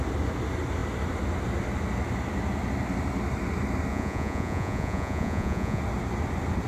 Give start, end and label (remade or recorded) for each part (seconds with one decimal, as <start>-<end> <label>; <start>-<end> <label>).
0.0-3.9 recorded; 3.9-5.8 remade; 5.8-6.7 recorded